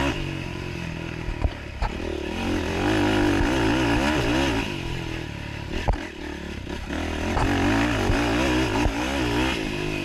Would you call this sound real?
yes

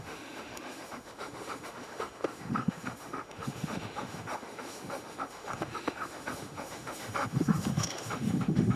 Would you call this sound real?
no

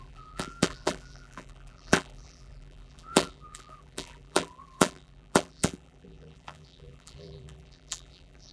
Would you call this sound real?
no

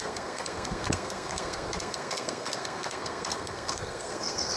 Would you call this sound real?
no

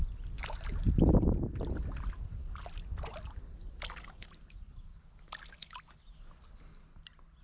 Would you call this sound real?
yes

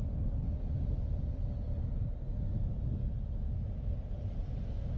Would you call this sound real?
yes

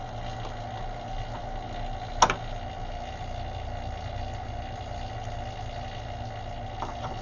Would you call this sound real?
yes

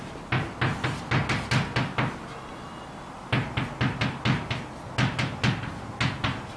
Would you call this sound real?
yes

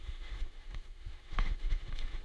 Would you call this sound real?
no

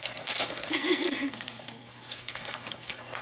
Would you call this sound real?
no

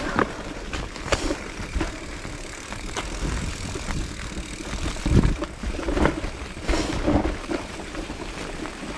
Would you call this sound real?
no